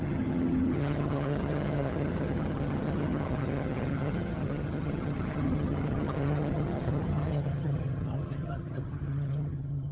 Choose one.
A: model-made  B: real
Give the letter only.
A